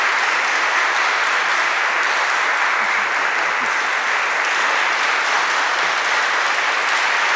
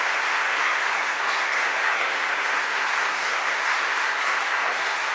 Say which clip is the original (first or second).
first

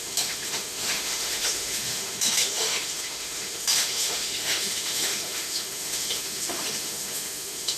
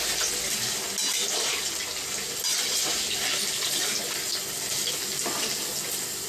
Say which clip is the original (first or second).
second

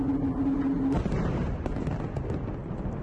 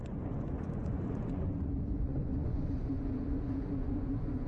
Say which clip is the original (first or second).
first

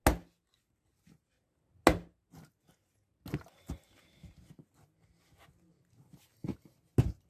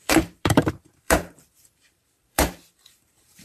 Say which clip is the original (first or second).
first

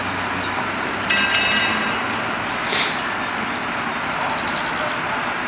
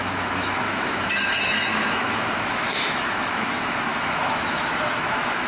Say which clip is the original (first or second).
first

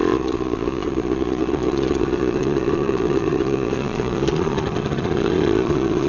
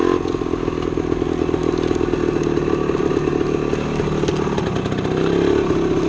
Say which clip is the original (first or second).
second